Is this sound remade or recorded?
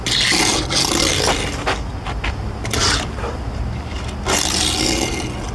recorded